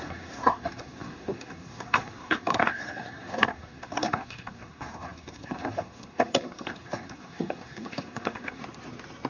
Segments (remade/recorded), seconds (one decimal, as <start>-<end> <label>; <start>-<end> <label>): 0.0-8.6 remade; 8.6-9.3 recorded

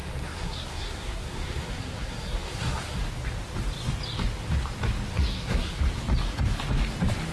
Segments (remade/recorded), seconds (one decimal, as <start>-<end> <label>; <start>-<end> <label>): 0.0-3.0 remade; 3.0-5.1 recorded; 5.1-5.8 remade; 5.8-7.3 recorded